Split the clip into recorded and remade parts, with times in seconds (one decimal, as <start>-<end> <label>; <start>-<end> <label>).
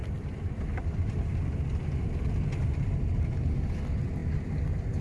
0.0-1.5 remade; 1.5-5.0 recorded